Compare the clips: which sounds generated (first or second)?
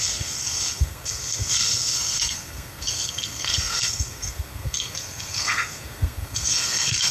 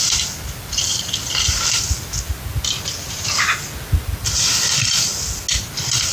first